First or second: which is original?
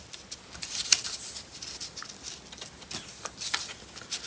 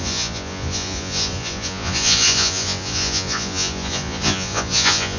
first